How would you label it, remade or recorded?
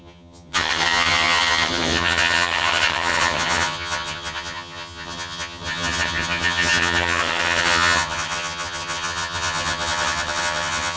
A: remade